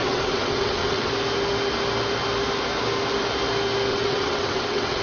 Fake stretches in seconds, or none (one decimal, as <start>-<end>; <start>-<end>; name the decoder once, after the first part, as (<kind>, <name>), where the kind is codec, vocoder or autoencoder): 0.0-1.1 (vocoder, WaveNeXt); 3.9-5.0